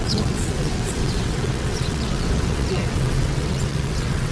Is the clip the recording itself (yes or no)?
no